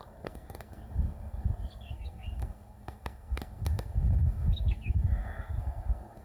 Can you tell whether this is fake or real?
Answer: fake